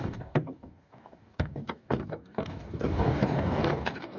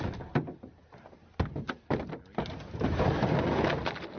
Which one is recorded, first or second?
second